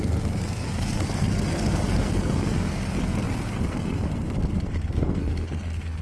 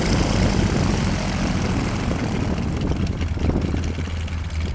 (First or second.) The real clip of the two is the second